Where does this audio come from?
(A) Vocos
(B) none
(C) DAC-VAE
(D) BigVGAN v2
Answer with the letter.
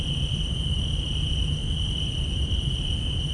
B